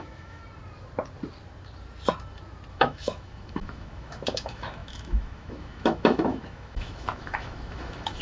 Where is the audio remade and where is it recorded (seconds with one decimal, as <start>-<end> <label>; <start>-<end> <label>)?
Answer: 0.0-0.4 remade; 0.4-2.7 recorded; 2.7-8.2 remade